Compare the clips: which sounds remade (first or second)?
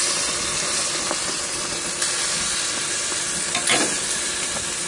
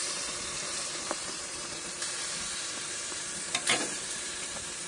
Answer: second